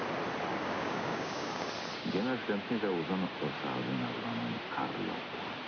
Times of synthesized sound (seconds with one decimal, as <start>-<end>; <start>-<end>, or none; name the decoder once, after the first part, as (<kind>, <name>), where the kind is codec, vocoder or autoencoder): 0.5-1.7 (codec, DAC)